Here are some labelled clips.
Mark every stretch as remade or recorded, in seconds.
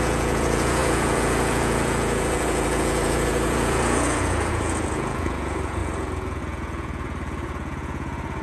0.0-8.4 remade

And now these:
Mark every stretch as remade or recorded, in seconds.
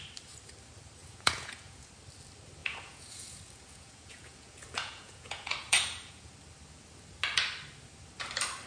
0.0-1.0 recorded; 1.0-1.9 remade; 1.9-2.6 recorded; 2.6-6.3 remade; 6.3-8.7 recorded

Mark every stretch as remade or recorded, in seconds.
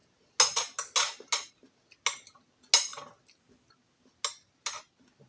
0.0-5.3 recorded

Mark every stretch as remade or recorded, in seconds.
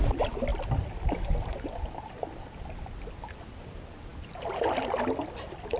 0.0-5.8 recorded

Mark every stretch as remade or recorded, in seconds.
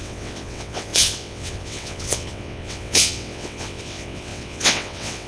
0.0-5.3 remade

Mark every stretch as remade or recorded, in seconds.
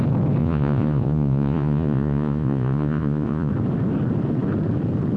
0.0-0.4 recorded; 0.4-3.5 remade; 3.5-5.2 recorded